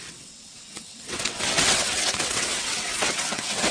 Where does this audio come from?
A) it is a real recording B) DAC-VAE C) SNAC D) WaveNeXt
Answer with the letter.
D